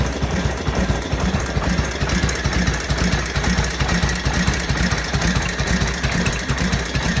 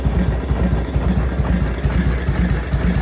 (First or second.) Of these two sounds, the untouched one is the second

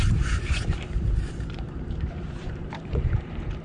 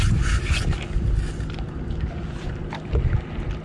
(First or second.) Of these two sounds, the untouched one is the second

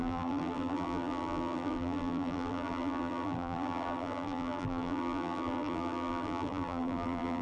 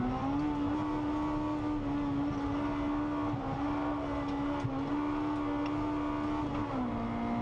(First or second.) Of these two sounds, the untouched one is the second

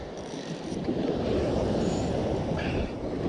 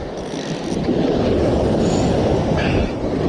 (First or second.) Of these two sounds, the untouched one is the second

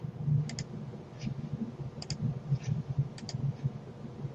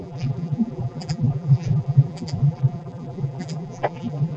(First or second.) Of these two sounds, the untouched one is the first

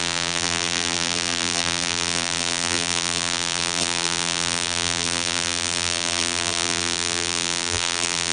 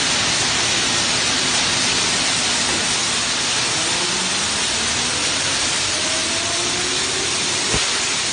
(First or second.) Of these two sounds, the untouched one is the second